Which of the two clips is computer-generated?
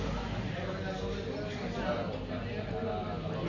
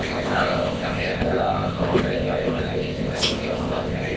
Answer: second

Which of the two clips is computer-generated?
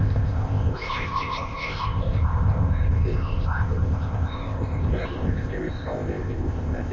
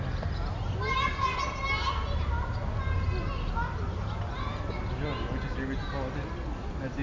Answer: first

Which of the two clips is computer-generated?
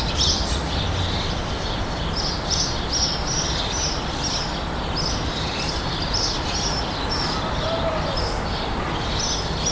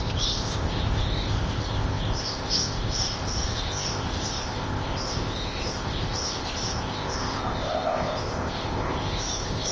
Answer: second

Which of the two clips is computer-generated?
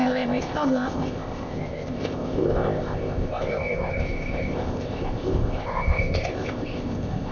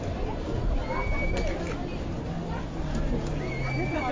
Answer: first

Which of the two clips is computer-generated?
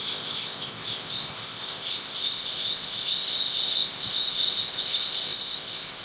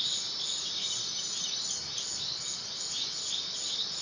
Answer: first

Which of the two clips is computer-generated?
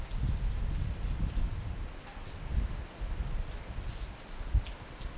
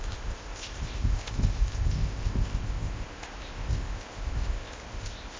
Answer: second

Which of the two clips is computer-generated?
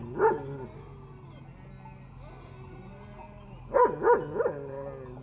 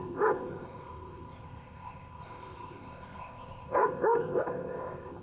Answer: second